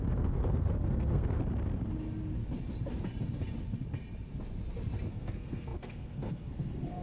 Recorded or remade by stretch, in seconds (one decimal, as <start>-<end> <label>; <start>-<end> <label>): 0.0-1.4 remade; 1.4-5.1 recorded; 5.1-7.0 remade